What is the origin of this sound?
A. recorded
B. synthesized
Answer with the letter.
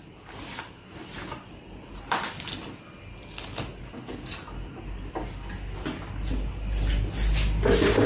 A